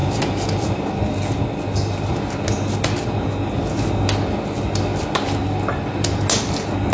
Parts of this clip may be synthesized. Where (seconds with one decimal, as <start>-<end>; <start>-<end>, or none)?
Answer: 0.0-0.8